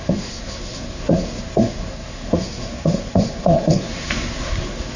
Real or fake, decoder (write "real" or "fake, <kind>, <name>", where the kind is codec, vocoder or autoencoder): fake, codec, SNAC